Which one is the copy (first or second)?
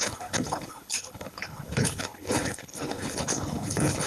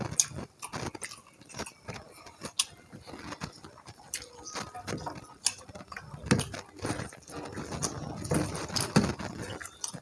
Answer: first